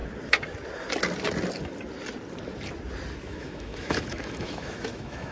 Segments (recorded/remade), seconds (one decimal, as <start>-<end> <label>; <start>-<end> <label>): 0.0-3.2 recorded; 3.2-5.3 remade